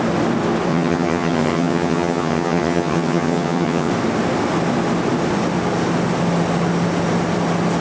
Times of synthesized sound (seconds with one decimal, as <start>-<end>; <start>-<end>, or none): 0.7-3.9